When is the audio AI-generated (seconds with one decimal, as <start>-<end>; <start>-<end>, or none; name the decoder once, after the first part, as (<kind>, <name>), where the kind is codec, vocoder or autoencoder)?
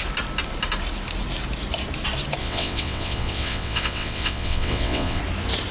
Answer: 2.4-5.2 (vocoder, WaveNeXt)